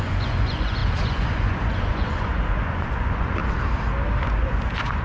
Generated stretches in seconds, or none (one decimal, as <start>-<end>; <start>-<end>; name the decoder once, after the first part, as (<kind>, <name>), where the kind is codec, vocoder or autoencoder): 0.0-3.4 (vocoder, Vocos); 4.2-5.0